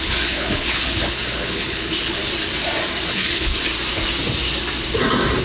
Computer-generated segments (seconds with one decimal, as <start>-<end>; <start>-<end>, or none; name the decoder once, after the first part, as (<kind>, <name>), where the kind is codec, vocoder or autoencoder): 0.0-2.2 (codec, HILCodec); 3.1-3.7